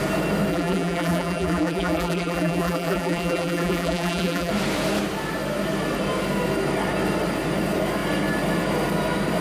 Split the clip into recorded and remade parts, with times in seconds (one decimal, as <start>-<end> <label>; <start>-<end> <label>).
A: 0.0-0.5 recorded; 0.5-4.5 remade; 4.5-9.4 recorded